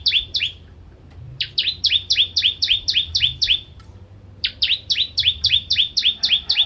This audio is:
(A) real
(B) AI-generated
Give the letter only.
B